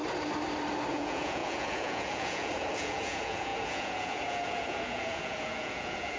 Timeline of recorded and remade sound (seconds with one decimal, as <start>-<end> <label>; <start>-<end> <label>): 0.0-0.9 recorded; 0.9-6.2 remade